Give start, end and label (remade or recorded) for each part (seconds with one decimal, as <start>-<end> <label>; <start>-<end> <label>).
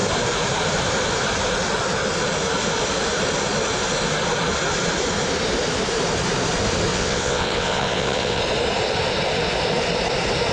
0.0-6.9 recorded; 6.9-8.4 remade; 8.4-10.5 recorded